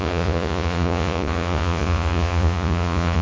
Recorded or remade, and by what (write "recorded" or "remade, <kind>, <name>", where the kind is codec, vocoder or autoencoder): remade, vocoder, Vocos